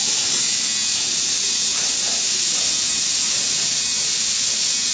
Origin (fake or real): real